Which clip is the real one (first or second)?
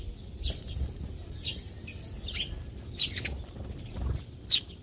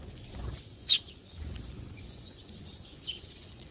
first